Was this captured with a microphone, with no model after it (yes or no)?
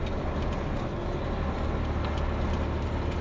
yes